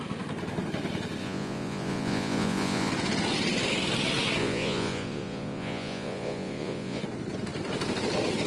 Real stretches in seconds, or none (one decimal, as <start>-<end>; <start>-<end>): 0.0-1.2; 2.9-4.4; 7.0-8.5